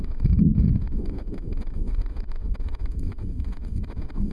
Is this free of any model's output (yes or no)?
no